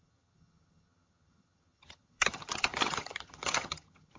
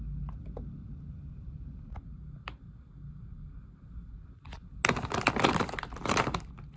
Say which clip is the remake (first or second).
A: first